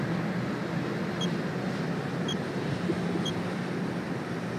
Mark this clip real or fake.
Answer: real